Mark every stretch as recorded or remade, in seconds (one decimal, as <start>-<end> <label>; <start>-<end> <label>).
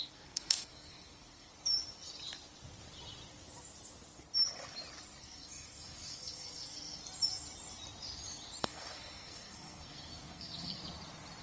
0.0-1.5 remade; 1.5-5.2 recorded; 5.2-7.0 remade; 7.0-8.6 recorded; 8.6-10.8 remade; 10.8-11.4 recorded